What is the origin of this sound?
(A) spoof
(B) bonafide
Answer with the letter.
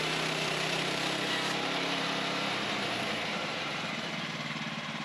A